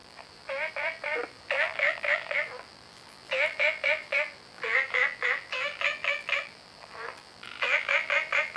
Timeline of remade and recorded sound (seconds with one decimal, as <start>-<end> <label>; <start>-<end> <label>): 0.0-8.6 remade